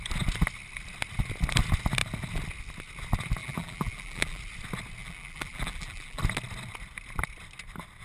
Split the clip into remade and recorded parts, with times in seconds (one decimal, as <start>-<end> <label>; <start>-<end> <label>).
0.0-3.4 recorded; 3.4-4.4 remade; 4.4-5.0 recorded; 5.0-6.2 remade; 6.2-8.0 recorded